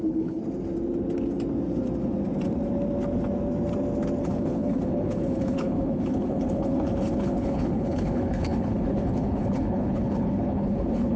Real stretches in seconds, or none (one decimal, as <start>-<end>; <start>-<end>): 0.4-4.2